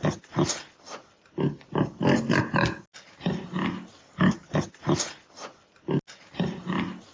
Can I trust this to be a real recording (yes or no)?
yes